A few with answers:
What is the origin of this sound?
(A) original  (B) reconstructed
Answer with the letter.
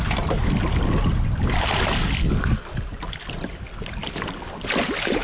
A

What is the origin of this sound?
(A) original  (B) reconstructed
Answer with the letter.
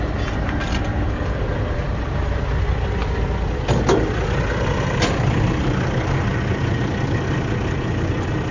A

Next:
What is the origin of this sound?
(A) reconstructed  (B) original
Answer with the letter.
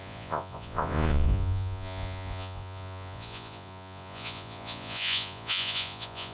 A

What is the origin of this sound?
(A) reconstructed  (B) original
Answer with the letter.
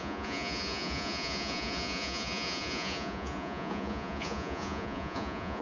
A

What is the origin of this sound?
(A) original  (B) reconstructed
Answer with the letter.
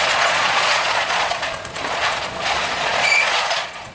B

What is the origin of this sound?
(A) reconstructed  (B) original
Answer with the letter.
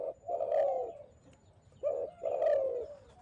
B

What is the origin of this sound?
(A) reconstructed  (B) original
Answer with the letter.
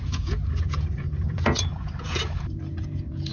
A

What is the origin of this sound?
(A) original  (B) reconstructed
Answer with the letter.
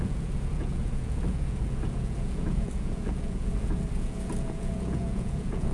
B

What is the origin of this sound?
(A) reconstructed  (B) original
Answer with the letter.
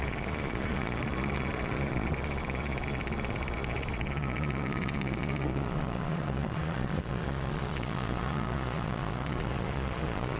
A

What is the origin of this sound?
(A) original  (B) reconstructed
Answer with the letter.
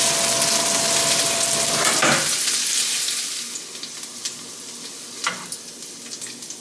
A